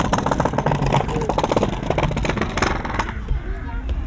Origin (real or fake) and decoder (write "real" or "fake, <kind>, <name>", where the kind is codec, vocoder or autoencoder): real